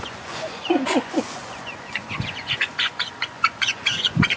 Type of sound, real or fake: fake